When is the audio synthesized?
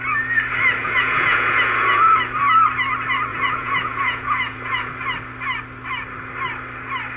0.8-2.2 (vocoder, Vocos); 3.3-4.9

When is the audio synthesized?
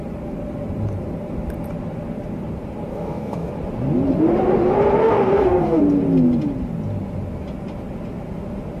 2.9-3.5 (codec, DAC); 5.0-5.8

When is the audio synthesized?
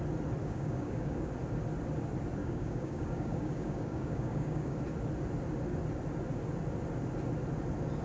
0.4-1.3 (codec, DAC); 2.4-4.8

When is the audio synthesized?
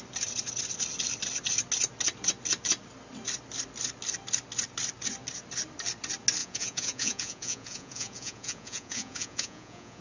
6.4-10.0 (vocoder, Vocos)